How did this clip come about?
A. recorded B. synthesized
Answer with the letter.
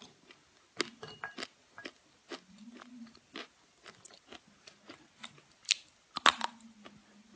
A